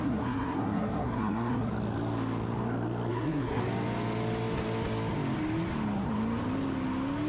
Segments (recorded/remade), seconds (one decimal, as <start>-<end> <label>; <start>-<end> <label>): 0.0-1.7 remade; 1.7-3.1 recorded; 3.1-3.6 remade; 3.6-7.3 recorded